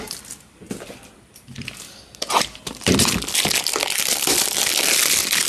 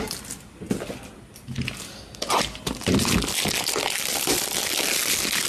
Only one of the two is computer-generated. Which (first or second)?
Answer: first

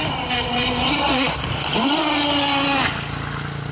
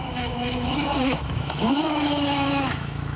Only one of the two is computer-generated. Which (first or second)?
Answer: second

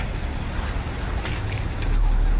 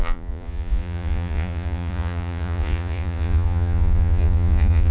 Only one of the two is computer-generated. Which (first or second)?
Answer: second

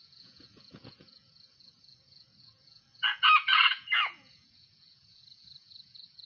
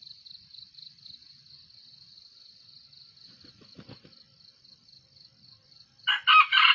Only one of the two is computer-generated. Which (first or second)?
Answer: first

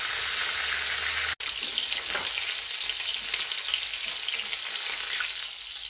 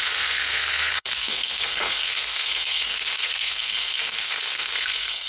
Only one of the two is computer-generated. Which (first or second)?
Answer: second